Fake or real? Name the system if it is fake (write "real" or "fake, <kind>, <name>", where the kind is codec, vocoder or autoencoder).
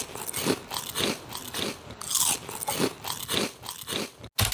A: real